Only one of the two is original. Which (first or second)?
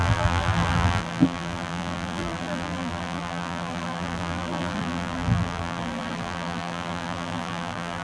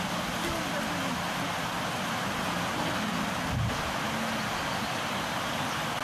second